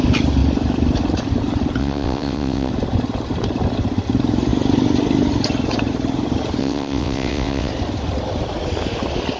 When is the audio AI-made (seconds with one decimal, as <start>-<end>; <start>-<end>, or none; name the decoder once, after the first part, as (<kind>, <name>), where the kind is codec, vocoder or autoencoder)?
1.8-2.7 (vocoder, WaveNeXt); 6.6-7.7